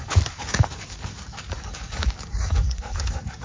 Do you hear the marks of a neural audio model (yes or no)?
yes